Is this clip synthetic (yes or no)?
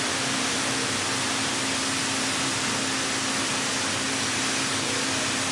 no